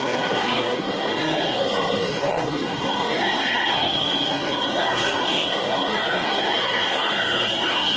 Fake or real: fake